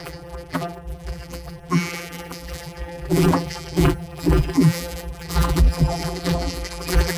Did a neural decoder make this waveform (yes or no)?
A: yes